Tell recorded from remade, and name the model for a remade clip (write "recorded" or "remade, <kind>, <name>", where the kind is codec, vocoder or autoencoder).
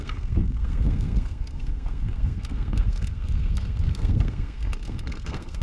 remade, codec, SNAC